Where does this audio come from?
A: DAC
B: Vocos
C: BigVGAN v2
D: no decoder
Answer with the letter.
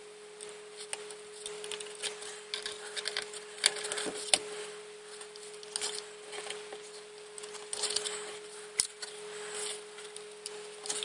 D